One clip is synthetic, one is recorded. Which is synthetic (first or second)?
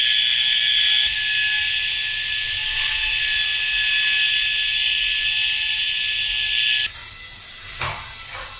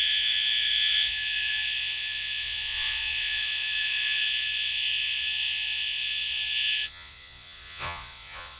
second